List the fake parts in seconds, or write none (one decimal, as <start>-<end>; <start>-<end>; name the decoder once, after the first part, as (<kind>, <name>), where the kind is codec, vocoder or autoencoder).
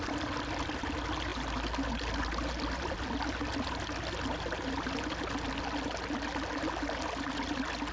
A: none